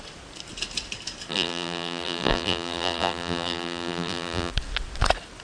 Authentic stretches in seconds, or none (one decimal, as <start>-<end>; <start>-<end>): 0.0-1.3; 4.5-5.4